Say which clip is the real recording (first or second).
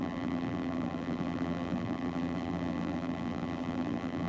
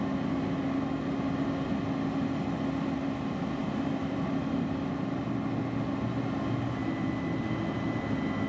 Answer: second